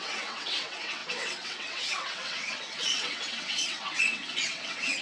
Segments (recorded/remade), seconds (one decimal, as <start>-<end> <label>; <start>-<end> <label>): 0.0-5.0 remade